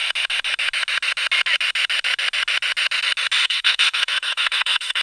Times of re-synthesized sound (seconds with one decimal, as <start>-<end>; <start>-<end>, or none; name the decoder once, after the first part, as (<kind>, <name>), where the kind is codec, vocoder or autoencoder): 3.4-5.0 (codec, SNAC)